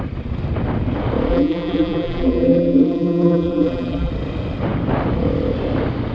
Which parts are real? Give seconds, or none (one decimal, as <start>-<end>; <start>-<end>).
0.0-1.3; 4.1-6.1